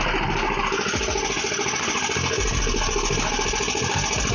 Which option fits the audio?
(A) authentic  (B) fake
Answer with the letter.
A